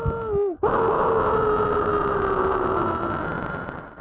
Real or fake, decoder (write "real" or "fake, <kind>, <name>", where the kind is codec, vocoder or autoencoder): real